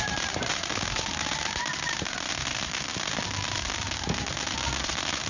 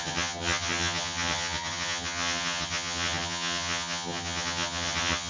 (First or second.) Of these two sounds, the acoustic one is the first